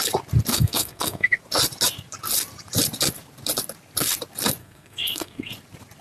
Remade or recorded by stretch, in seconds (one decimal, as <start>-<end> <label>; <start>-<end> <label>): 0.0-0.5 recorded; 0.5-1.4 remade; 1.4-4.6 recorded; 4.6-5.5 remade; 5.5-6.0 recorded